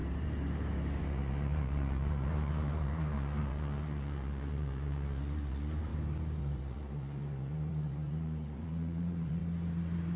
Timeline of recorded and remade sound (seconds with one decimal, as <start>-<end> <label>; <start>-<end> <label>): 0.0-1.0 recorded; 1.0-5.9 remade; 5.9-6.4 recorded; 6.4-9.4 remade; 9.4-10.2 recorded

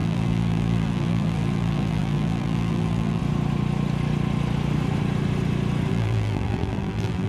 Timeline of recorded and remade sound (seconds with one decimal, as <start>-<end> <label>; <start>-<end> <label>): 0.0-3.2 remade; 3.2-5.9 recorded; 5.9-7.3 remade

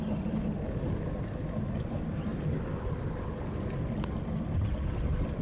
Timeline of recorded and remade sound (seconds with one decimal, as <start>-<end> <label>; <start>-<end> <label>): 0.0-5.4 recorded

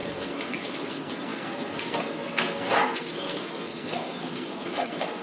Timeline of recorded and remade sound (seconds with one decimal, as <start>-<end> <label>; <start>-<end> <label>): 0.0-5.2 remade

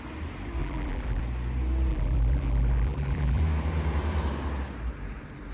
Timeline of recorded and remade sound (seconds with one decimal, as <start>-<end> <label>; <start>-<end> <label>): 0.0-0.6 recorded; 0.6-1.2 remade; 1.2-1.9 recorded; 1.9-3.4 remade; 3.4-5.5 recorded